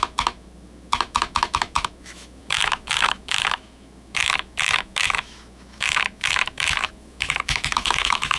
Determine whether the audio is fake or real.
fake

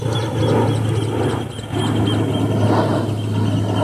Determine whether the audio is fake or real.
real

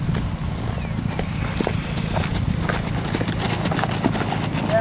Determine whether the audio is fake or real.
real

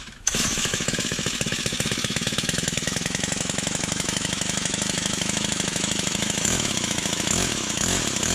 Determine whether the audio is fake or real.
fake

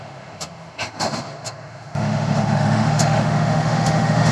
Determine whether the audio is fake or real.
fake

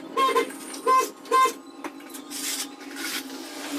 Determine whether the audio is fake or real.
real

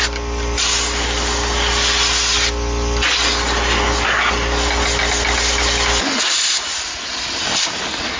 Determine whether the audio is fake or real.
real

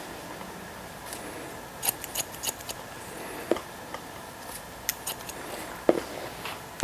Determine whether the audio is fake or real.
real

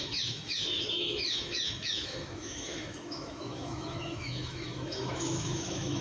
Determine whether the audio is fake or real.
fake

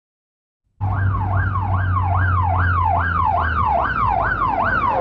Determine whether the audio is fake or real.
real